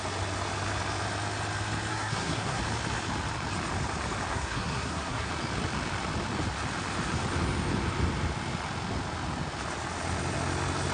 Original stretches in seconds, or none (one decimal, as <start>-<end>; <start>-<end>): 0.0-1.9; 2.6-4.3; 5.3-10.9